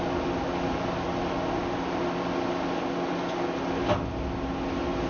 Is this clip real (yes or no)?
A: yes